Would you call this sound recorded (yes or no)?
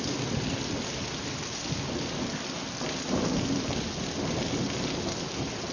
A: yes